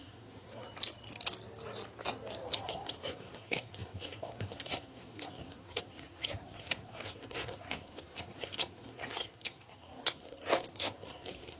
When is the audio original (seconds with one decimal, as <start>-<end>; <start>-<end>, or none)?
0.6-2.6